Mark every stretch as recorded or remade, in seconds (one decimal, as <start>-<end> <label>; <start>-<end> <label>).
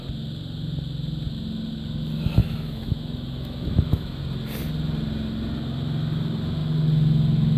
0.0-2.4 recorded; 2.4-4.2 remade; 4.2-7.6 recorded